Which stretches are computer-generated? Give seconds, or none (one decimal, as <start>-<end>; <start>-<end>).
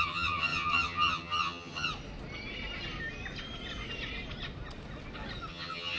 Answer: 0.0-1.9; 5.5-6.0